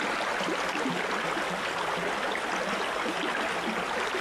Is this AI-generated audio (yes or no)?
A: no